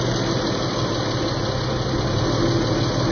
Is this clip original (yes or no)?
yes